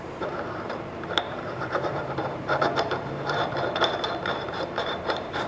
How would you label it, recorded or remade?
remade